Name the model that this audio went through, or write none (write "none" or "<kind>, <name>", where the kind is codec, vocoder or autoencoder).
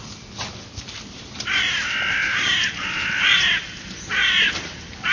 vocoder, BigVGAN v2